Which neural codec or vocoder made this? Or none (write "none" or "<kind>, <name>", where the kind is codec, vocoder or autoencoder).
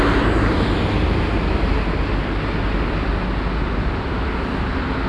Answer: none